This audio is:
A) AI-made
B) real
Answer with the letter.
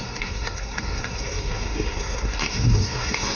A